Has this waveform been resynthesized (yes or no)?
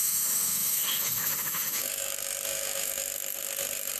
yes